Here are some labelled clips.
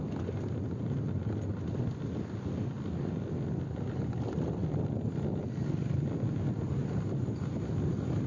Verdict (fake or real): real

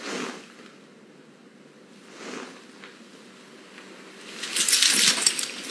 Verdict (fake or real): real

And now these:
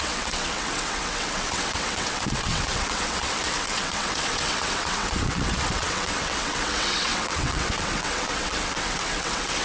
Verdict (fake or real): fake